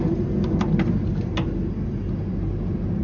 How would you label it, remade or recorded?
recorded